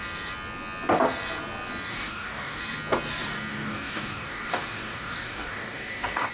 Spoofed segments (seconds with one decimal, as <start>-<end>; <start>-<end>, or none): 1.9-2.6; 3.5-6.3